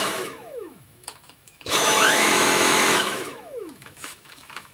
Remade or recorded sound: remade